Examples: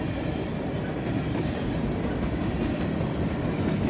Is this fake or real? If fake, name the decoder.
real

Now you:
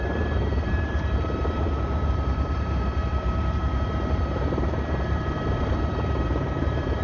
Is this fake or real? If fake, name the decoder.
fake, vocoder, BigVGAN v2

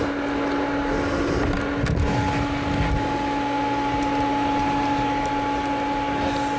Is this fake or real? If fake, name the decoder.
real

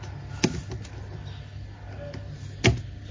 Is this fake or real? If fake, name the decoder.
real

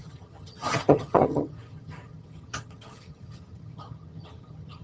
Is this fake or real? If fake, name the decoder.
fake, vocoder, HiFi-GAN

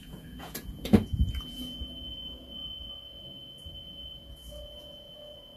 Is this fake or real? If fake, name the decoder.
fake, vocoder, Vocos